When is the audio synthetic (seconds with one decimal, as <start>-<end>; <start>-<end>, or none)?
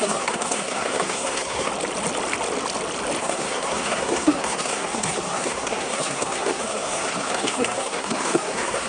0.0-1.7; 3.2-8.9